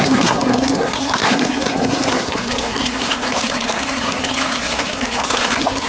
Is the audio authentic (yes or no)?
no